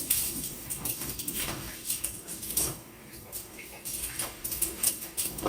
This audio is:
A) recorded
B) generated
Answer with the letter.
B